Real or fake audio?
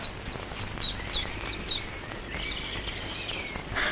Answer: real